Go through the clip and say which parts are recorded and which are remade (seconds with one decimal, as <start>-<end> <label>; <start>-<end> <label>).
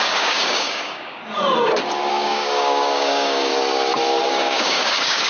0.0-1.2 remade; 1.2-2.1 recorded; 2.1-3.5 remade; 3.5-4.3 recorded; 4.3-5.3 remade